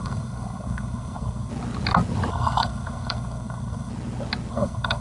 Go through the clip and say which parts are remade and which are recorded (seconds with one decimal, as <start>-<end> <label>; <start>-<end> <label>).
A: 0.0-1.5 remade; 1.5-2.3 recorded; 2.3-3.9 remade; 3.9-4.5 recorded; 4.5-5.0 remade